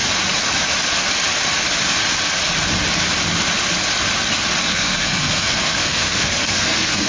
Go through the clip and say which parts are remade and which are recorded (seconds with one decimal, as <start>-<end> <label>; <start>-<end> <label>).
0.0-4.6 recorded; 4.6-7.1 remade

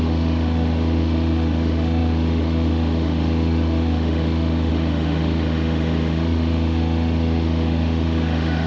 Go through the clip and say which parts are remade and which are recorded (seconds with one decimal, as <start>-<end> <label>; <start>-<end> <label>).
0.0-8.7 remade

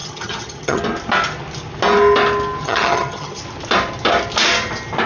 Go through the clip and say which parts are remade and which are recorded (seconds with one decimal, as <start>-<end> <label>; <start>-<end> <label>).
0.0-0.8 remade; 0.8-2.6 recorded; 2.6-3.4 remade; 3.4-5.1 recorded

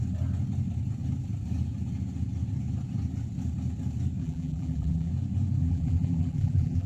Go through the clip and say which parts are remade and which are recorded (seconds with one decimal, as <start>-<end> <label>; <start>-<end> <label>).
0.0-4.2 recorded; 4.2-5.1 remade; 5.1-5.6 recorded; 5.6-6.9 remade

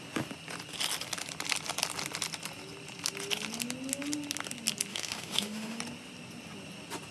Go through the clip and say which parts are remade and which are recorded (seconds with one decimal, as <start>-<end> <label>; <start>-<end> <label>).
0.0-4.9 recorded; 4.9-5.8 remade; 5.8-7.1 recorded

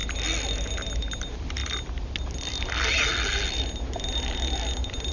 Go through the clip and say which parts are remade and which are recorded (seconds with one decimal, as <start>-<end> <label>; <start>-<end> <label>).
0.0-5.1 recorded

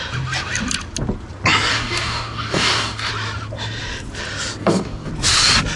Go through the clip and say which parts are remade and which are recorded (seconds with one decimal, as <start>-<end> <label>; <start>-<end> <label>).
0.0-1.7 recorded; 1.7-3.1 remade; 3.1-4.6 recorded; 4.6-5.1 remade; 5.1-5.8 recorded